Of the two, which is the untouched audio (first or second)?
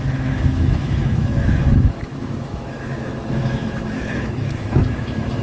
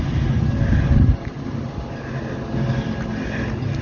second